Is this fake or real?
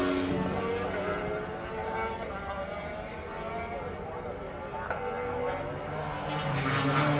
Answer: real